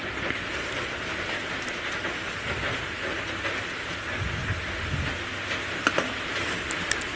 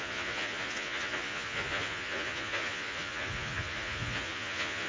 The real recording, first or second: first